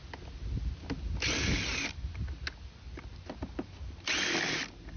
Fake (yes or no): no